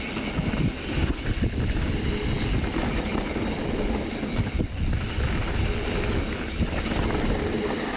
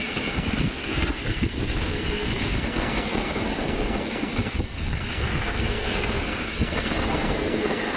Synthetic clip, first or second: second